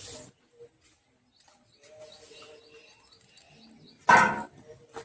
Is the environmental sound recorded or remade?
recorded